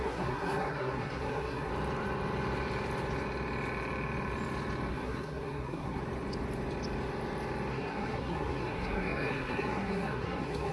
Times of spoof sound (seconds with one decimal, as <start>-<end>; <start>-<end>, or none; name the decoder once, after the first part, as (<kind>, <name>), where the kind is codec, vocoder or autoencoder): 0.0-1.7 (codec, SNAC); 4.9-6.0; 7.7-10.7